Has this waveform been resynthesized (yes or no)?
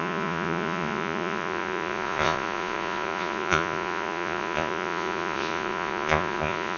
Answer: yes